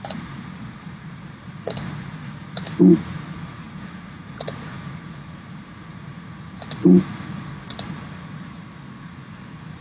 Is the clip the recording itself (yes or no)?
no